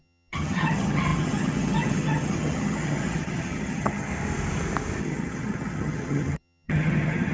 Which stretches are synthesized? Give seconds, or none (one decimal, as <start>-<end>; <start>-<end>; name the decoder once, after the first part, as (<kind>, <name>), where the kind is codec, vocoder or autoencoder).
0.0-4.1 (vocoder, HiFi-GAN); 5.0-7.3